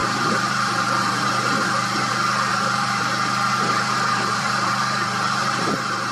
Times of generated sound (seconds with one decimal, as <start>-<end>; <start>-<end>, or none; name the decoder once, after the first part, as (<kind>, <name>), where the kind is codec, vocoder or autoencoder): 0.0-2.1 (vocoder, BigVGAN v2); 2.5-3.1; 3.5-6.1